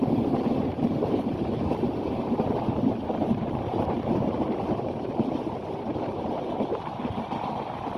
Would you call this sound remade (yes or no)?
yes